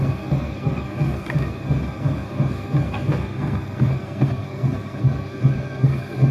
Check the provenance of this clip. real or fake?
fake